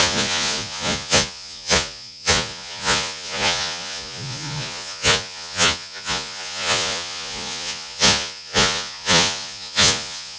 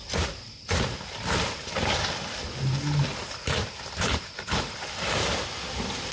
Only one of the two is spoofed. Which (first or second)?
first